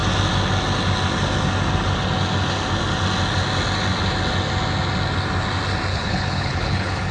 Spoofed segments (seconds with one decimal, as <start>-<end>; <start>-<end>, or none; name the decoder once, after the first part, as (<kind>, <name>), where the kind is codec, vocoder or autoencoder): 5.9-7.1 (codec, HILCodec)

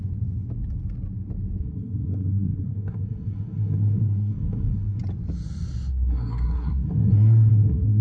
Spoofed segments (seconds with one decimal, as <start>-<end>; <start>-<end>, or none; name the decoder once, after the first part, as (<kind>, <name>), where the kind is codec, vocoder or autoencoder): 1.6-5.0 (codec, SNAC); 5.9-8.0

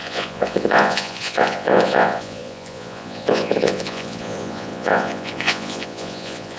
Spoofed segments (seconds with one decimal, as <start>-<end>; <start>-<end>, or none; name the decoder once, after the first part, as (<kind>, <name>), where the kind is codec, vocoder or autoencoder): 0.0-6.6 (vocoder, Vocos)

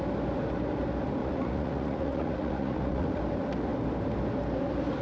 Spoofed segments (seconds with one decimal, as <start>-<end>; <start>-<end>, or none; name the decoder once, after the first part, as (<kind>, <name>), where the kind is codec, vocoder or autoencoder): 1.2-3.2 (vocoder, Vocos)

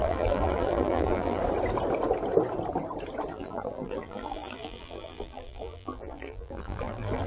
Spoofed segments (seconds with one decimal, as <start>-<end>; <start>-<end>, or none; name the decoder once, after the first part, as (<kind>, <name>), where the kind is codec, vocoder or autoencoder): 0.0-1.4 (vocoder, BigVGAN v2); 3.3-7.3

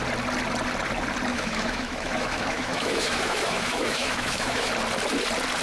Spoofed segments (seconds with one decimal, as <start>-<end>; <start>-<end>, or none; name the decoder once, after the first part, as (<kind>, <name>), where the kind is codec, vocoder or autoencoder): 1.3-4.7 (autoencoder, DAC-VAE)